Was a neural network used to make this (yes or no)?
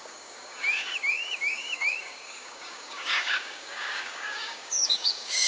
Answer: yes